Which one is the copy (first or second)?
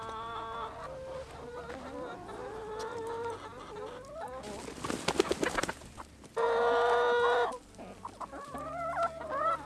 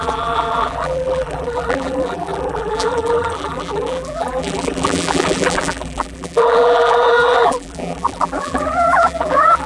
second